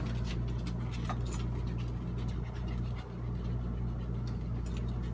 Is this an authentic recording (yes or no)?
yes